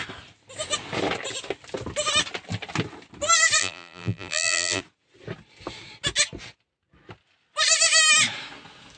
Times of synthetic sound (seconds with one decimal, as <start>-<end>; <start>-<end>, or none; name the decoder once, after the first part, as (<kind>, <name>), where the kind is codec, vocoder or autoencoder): 3.6-4.8 (vocoder, BigVGAN v2)